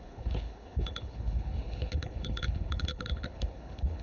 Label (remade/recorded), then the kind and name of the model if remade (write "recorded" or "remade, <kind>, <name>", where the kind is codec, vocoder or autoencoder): remade, codec, HILCodec